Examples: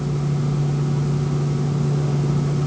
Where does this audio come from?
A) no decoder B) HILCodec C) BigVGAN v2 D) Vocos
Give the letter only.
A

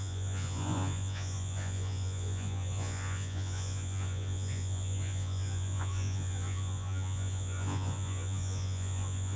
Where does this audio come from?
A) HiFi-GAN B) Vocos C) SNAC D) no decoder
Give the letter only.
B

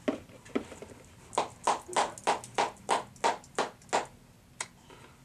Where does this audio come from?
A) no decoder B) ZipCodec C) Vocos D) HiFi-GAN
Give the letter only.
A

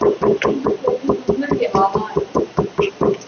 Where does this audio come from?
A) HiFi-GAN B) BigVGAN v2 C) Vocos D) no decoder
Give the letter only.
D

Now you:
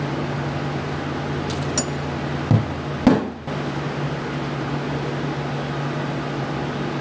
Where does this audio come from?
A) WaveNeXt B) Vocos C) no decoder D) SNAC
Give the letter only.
C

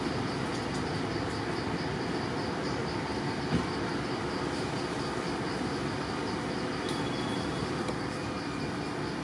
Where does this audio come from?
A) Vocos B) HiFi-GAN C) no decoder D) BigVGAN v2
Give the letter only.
C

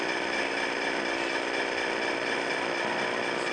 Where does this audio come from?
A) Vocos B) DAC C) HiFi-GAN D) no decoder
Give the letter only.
D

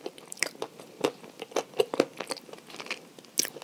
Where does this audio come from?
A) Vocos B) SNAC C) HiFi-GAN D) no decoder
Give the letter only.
D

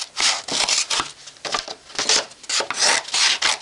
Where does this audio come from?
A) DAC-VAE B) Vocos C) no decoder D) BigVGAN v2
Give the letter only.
C